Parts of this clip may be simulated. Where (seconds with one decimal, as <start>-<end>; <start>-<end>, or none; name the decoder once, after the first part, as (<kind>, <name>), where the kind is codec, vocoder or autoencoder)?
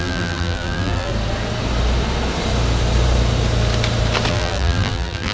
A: 0.0-1.1 (vocoder, BigVGAN v2); 4.3-5.3